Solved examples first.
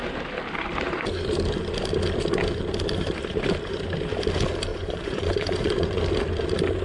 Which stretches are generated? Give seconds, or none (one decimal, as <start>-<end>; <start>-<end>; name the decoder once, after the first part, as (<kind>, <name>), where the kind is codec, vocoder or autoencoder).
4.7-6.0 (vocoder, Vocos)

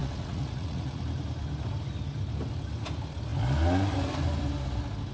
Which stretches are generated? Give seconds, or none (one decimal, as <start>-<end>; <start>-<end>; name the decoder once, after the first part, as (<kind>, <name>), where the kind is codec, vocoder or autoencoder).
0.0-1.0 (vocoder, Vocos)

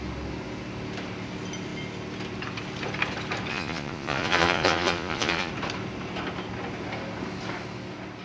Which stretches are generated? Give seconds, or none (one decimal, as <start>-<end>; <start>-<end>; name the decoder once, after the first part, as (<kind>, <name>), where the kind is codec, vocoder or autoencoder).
3.5-5.5 (vocoder, Vocos)